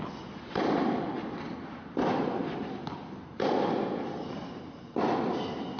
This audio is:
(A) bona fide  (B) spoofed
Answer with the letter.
A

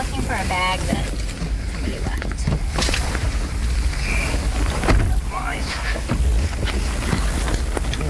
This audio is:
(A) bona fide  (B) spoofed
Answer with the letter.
A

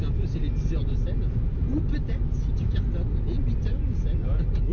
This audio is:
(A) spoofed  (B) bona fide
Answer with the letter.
B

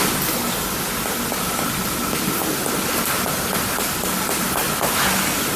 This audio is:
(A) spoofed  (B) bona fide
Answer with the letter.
B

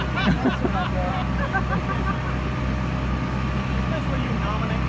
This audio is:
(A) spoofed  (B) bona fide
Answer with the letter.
B